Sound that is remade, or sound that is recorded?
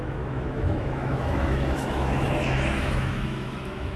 remade